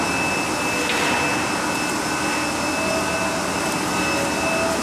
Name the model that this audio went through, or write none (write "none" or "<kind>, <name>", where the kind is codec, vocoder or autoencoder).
none